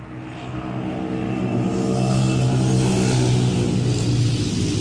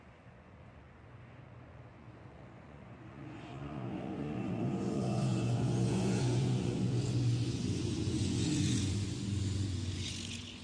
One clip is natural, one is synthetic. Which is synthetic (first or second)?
second